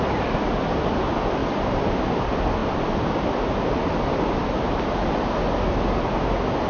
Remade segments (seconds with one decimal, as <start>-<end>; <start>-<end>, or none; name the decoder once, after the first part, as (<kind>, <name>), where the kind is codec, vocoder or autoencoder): 1.4-2.0 (vocoder, BigVGAN v2)